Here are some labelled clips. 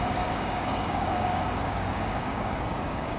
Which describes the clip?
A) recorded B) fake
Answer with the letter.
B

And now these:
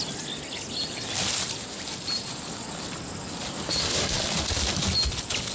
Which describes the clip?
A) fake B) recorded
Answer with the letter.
B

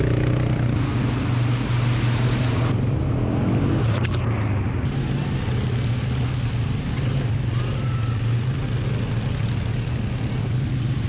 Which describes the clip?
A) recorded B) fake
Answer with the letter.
A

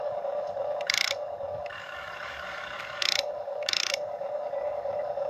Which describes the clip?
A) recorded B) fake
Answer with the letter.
B